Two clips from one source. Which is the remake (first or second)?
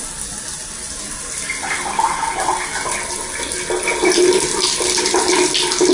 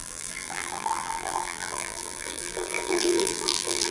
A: second